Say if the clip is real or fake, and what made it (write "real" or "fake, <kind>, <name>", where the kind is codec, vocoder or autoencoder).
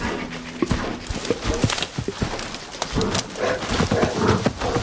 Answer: real